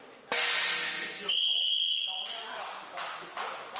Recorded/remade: recorded